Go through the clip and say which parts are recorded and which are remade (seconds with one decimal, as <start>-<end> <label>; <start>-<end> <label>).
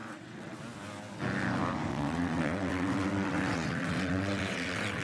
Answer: 0.0-0.6 remade; 0.6-1.9 recorded; 1.9-5.0 remade